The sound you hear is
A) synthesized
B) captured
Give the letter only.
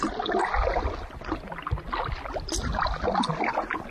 B